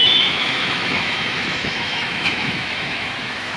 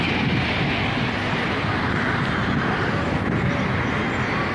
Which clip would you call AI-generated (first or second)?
first